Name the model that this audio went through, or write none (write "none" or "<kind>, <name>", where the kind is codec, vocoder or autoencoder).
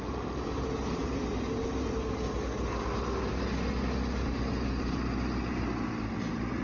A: none